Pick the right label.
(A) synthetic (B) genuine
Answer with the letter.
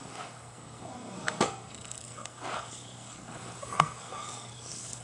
A